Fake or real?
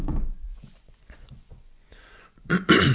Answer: fake